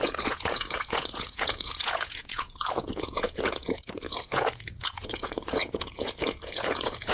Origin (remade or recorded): remade